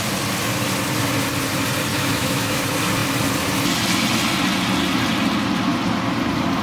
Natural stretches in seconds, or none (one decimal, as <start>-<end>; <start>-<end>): 0.0-1.9; 2.6-6.6